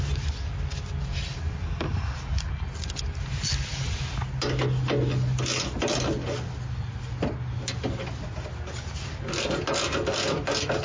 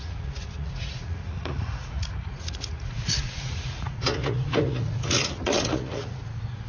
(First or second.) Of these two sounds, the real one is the first